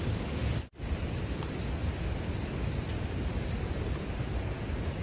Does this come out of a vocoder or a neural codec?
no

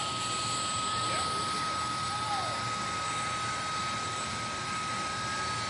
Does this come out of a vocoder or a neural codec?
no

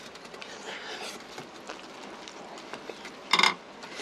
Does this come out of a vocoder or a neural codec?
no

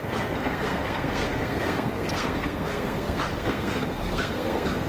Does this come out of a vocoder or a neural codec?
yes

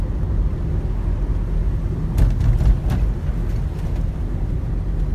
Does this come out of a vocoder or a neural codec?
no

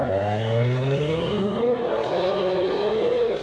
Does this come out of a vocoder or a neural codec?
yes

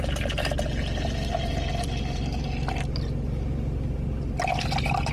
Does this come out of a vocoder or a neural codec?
no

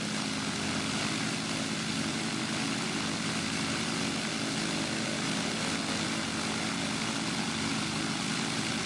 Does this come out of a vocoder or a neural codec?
no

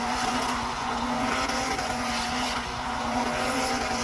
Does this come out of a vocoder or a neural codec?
yes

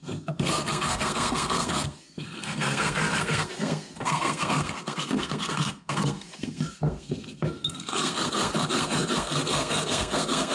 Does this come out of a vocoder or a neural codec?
yes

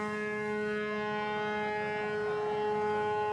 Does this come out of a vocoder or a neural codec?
no